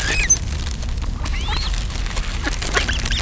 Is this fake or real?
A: real